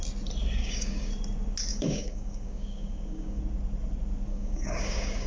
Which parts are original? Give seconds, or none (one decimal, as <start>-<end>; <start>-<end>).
0.0-0.6; 1.1-1.7; 3.4-4.3